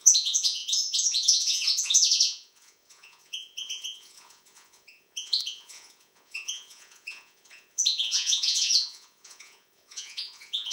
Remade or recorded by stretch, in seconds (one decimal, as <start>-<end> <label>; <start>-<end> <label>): 0.0-10.7 remade